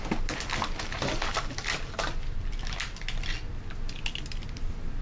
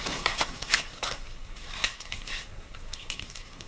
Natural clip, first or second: first